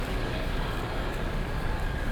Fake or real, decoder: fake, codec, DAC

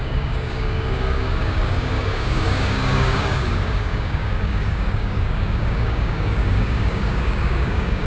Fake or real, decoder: fake, codec, DAC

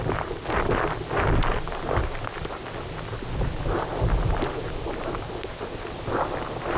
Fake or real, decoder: real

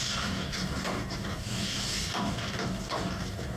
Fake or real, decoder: fake, codec, DAC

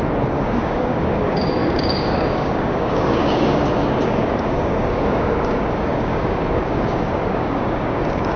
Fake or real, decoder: fake, codec, DAC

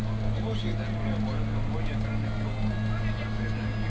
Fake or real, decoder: real